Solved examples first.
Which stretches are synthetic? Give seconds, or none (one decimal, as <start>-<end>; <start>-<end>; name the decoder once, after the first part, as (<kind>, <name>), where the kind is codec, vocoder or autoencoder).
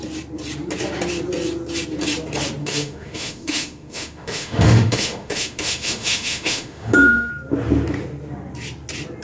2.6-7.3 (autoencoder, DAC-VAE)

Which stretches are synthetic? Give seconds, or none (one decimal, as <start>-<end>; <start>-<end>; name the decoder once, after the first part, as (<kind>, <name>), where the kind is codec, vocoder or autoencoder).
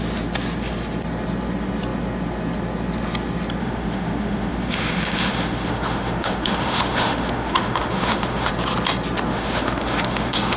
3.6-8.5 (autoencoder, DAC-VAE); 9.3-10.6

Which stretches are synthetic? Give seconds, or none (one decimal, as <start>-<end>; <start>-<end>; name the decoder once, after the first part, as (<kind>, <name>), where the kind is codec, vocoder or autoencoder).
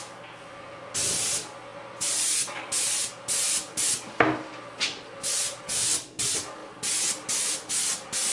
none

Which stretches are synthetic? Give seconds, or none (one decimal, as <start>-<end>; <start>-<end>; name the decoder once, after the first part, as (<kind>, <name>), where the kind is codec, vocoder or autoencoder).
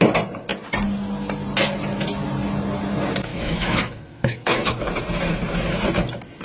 3.3-4.9 (autoencoder, DAC-VAE)